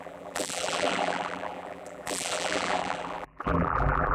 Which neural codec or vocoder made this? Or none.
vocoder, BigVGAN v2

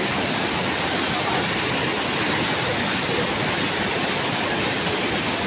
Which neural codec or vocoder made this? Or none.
none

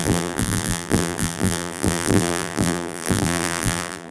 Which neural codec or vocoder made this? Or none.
vocoder, BigVGAN v2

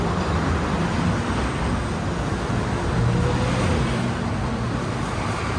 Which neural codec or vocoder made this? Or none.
none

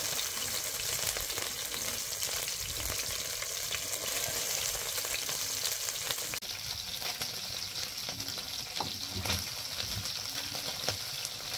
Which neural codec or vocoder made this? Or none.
none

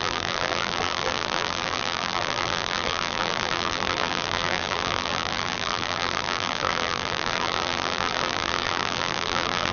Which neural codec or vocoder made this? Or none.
vocoder, BigVGAN v2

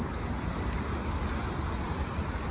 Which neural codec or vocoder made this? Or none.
none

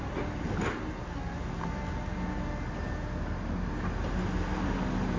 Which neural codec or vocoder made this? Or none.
none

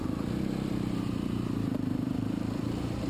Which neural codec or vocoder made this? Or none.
vocoder, BigVGAN v2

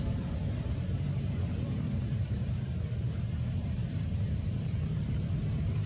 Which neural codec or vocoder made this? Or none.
vocoder, BigVGAN v2